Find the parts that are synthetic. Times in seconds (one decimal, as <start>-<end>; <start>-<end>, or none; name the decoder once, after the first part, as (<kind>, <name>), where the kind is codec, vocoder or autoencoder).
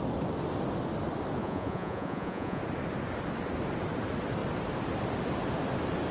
1.4-2.6 (vocoder, Vocos)